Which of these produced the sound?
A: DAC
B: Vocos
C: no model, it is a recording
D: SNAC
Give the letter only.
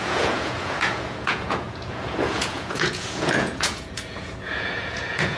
B